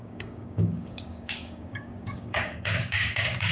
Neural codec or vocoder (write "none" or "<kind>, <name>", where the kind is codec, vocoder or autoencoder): codec, DAC